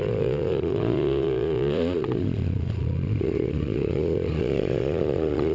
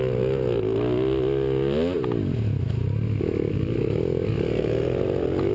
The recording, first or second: second